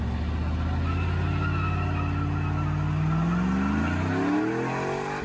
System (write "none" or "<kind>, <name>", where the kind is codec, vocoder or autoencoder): none